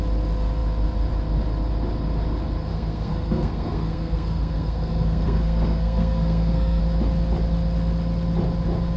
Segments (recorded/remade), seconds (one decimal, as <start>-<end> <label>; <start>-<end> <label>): 0.0-2.7 recorded; 2.7-6.8 remade; 6.8-9.0 recorded